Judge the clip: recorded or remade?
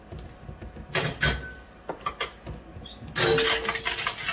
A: recorded